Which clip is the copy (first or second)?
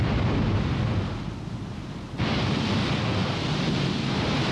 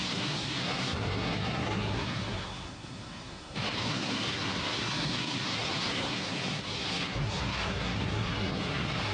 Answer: second